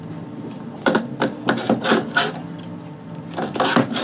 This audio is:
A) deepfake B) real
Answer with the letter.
B